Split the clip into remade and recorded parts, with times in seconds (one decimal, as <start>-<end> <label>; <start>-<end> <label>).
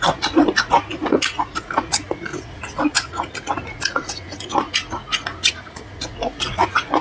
0.0-7.0 remade